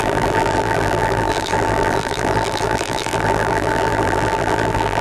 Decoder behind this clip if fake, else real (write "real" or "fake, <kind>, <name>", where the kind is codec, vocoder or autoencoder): fake, vocoder, BigVGAN v2